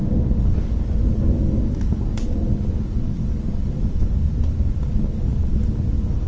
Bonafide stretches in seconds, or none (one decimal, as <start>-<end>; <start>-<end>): 0.0-6.3